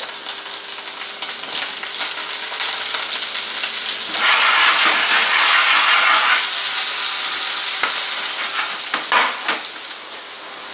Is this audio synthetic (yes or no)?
no